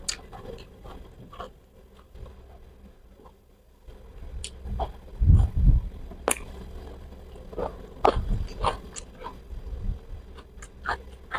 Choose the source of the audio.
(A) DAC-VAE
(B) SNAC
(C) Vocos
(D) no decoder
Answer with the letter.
D